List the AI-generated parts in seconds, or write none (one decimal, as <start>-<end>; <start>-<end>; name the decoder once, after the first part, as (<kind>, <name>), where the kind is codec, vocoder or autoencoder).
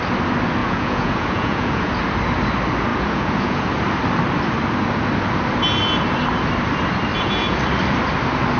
0.6-1.9 (vocoder, Vocos); 2.9-3.7; 7.1-7.6